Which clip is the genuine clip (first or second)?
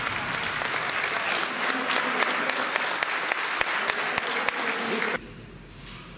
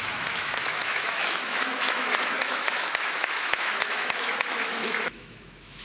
first